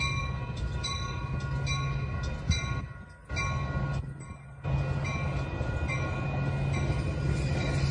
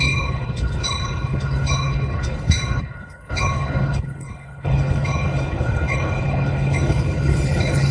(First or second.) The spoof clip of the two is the second